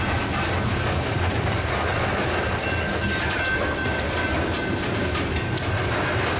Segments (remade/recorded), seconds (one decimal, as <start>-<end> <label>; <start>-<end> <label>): 0.0-6.4 recorded